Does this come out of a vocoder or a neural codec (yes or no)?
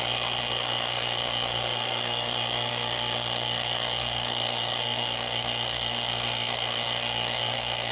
yes